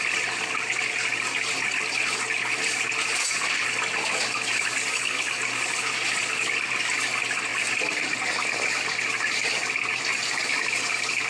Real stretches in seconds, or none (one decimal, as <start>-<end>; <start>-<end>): 0.0-4.9; 5.4-11.3